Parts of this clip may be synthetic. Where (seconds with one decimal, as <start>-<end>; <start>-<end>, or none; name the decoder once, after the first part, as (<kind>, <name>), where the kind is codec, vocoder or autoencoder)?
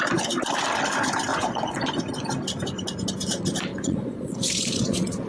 1.3-1.9 (vocoder, Vocos); 3.7-5.3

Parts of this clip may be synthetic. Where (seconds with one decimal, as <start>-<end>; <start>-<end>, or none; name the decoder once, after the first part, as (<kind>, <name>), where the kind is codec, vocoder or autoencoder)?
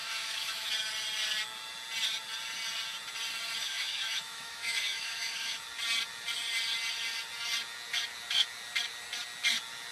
0.0-0.7 (autoencoder, DAC-VAE); 3.6-5.6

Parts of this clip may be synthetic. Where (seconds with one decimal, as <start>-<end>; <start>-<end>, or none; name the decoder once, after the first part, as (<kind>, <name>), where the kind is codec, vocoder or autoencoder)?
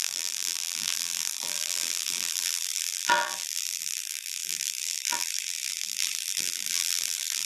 0.0-7.4 (vocoder, BigVGAN v2)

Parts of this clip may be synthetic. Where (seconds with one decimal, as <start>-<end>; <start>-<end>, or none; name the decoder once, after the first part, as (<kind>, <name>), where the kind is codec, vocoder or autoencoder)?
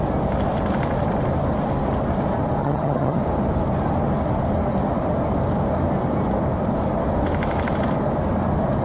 2.6-3.2 (vocoder, HiFi-GAN)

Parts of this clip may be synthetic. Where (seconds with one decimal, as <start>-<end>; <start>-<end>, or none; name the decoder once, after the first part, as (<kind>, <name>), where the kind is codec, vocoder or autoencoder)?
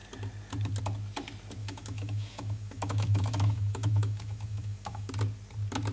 1.6-5.1 (autoencoder, DAC-VAE)